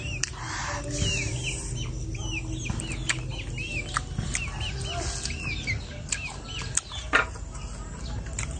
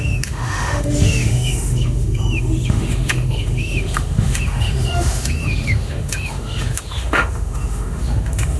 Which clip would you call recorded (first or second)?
first